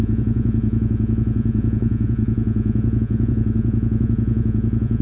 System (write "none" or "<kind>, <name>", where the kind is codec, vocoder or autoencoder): vocoder, Vocos